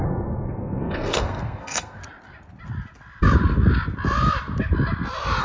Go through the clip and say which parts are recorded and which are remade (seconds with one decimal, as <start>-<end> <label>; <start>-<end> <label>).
0.0-2.0 remade; 2.0-5.4 recorded